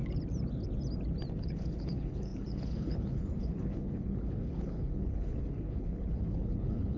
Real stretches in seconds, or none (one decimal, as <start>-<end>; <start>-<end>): 0.0-1.4